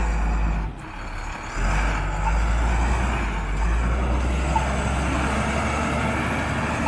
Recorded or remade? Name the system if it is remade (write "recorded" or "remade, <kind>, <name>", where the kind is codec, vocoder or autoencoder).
recorded